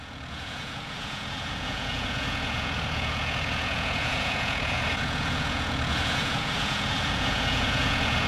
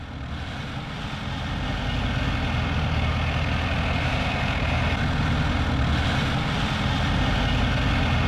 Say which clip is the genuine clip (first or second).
second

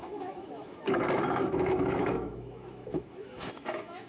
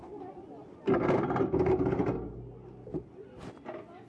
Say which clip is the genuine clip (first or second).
second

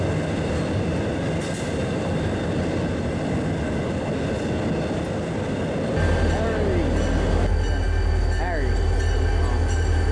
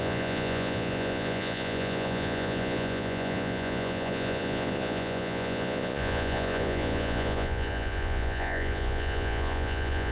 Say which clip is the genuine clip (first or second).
first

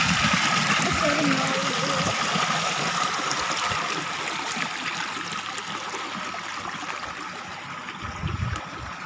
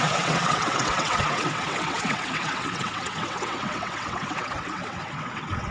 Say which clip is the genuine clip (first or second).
first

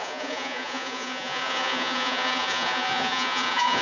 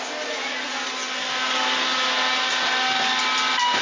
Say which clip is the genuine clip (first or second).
second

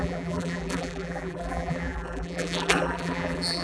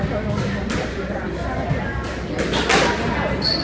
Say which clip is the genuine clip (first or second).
second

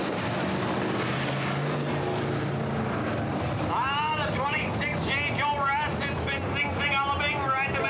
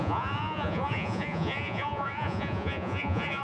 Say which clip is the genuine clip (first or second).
first